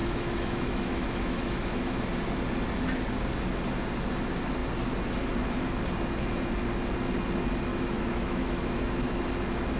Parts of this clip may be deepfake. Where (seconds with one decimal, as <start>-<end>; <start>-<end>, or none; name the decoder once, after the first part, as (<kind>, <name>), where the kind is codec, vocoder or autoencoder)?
0.0-2.0 (autoencoder, DAC-VAE); 7.7-9.2